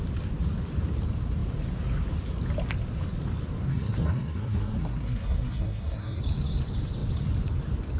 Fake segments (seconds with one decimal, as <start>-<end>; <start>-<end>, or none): 3.7-6.2